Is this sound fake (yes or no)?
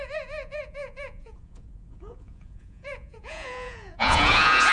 yes